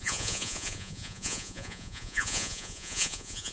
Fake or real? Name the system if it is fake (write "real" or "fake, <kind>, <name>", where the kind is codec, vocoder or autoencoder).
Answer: fake, vocoder, Vocos